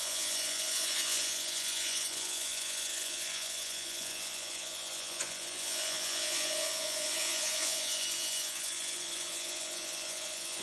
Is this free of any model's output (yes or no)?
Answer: no